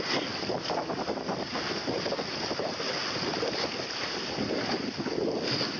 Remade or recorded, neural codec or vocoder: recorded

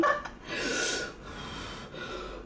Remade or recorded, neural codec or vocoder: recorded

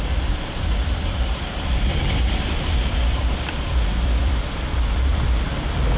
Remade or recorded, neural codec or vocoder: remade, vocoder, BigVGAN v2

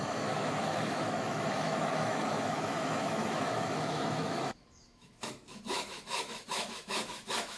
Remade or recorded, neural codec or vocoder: remade, autoencoder, DAC-VAE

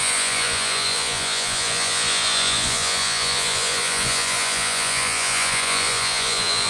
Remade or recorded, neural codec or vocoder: remade, vocoder, Vocos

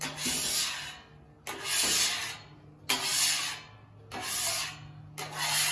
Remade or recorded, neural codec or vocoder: recorded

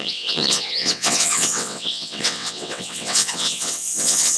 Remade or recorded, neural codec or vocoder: remade, vocoder, WaveNeXt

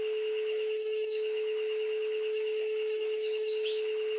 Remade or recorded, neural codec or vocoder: remade, autoencoder, DAC-VAE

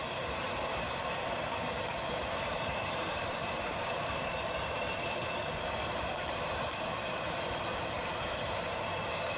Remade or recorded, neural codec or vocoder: remade, vocoder, BigVGAN v2